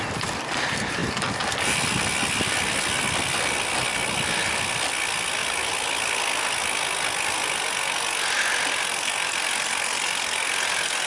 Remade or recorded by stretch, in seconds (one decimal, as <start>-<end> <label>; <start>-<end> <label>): 0.0-11.1 recorded